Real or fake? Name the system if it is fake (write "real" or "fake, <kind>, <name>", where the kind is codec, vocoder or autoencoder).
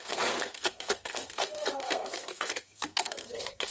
fake, codec, SNAC